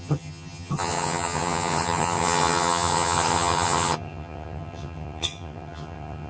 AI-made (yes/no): yes